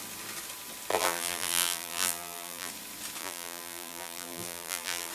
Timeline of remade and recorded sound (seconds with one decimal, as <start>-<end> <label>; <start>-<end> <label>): 0.0-0.9 recorded; 0.9-2.7 remade; 2.7-3.2 recorded; 3.2-5.1 remade